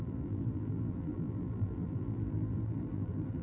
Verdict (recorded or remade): remade